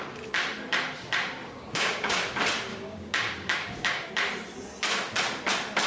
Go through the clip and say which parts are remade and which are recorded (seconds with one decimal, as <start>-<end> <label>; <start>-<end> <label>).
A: 0.0-1.4 recorded; 1.4-2.2 remade; 2.2-2.7 recorded; 2.7-4.1 remade; 4.1-5.9 recorded